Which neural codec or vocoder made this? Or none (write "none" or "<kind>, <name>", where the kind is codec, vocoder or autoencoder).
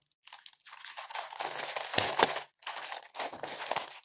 none